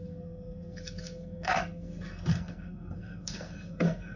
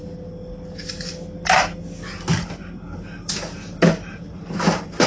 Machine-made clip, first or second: first